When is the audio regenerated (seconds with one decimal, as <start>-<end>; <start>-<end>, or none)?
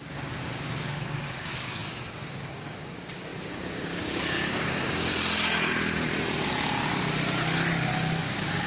0.0-5.1; 8.2-8.7